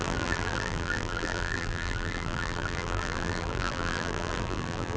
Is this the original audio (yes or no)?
no